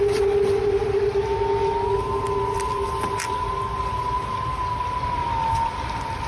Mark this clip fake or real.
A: real